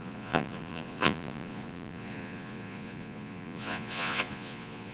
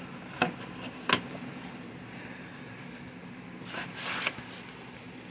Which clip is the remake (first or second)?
first